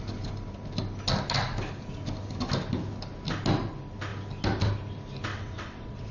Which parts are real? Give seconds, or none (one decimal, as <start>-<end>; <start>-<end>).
0.0-5.3